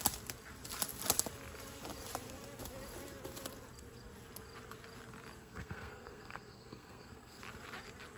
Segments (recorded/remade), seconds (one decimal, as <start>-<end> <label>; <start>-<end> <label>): 0.0-5.4 recorded; 5.4-7.4 remade; 7.4-8.2 recorded